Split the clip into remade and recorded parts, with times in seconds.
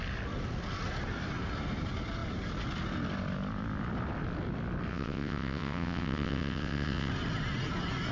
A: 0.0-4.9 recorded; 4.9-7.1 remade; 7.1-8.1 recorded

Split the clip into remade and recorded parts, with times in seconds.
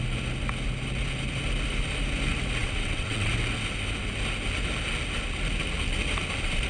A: 0.0-2.6 recorded; 2.6-3.3 remade; 3.3-6.7 recorded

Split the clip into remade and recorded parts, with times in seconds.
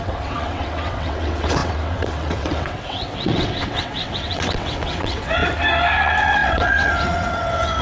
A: 0.0-5.4 remade; 5.4-6.0 recorded; 6.0-7.8 remade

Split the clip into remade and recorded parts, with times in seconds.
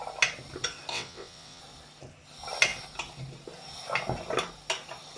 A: 0.0-0.9 recorded; 0.9-1.6 remade; 1.6-5.2 recorded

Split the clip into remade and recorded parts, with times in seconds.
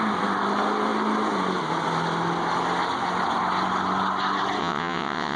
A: 0.0-4.6 recorded; 4.6-5.4 remade